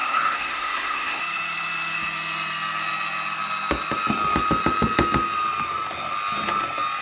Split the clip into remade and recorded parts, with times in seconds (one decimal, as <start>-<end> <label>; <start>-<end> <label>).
0.0-1.2 remade; 1.2-7.0 recorded